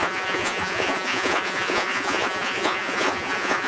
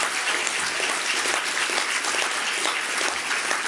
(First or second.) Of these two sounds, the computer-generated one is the first